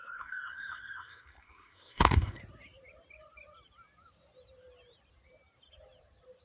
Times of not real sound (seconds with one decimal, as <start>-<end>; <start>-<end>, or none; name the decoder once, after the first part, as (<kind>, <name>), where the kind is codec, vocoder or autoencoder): 0.0-2.4 (codec, SNAC)